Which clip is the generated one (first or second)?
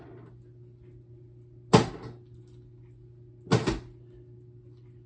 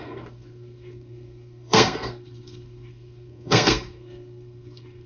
second